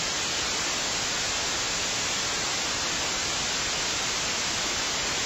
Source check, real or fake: real